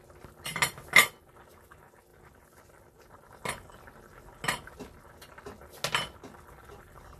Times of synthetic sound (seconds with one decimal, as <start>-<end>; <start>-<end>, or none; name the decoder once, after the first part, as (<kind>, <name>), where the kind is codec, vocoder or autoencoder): none